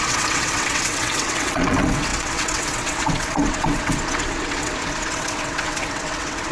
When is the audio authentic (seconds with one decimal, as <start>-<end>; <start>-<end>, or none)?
none